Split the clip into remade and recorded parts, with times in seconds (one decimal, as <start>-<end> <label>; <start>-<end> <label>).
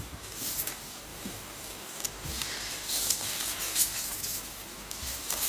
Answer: 0.0-5.5 remade